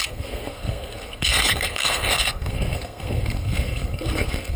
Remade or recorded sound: remade